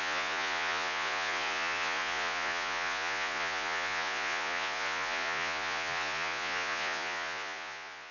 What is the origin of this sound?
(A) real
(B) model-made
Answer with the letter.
B